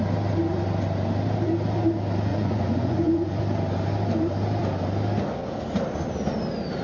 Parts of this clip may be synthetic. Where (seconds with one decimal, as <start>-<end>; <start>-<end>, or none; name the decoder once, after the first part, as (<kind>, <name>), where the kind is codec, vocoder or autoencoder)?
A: 2.3-3.4 (vocoder, Vocos)

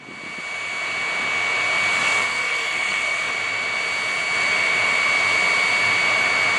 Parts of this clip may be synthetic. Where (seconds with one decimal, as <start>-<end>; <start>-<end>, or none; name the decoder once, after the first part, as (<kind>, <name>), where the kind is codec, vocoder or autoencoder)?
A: 2.0-3.3 (codec, SNAC)

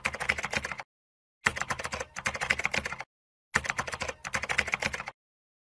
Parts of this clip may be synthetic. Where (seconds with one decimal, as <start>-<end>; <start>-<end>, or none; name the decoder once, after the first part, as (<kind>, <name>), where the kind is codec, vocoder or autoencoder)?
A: none

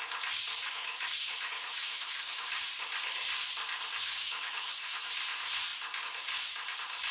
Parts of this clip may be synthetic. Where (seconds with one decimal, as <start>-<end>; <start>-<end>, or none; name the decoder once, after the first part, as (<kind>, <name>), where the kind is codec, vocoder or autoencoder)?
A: 0.6-2.5 (autoencoder, DAC-VAE); 4.0-5.1

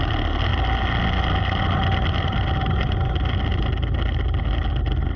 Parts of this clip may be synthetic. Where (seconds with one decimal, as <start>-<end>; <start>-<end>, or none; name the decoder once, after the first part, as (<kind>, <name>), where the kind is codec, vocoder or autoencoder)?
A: none

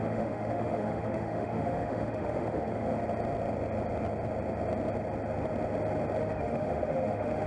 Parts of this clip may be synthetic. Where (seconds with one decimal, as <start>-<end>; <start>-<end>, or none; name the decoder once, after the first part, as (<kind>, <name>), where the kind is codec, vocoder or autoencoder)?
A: 0.0-3.0 (autoencoder, DAC-VAE); 6.2-7.5